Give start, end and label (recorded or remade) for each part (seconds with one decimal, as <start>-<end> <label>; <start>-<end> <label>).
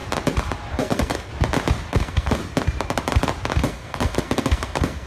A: 0.0-0.7 recorded; 0.7-1.3 remade; 1.3-1.9 recorded; 1.9-2.4 remade; 2.4-3.6 recorded; 3.6-5.1 remade